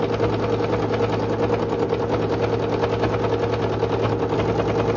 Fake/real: real